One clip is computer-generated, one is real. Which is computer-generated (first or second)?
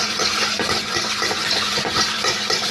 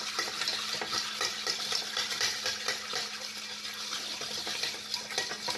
first